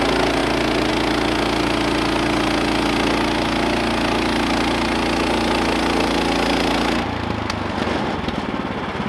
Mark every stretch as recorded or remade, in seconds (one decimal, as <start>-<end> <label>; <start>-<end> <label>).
0.0-9.1 recorded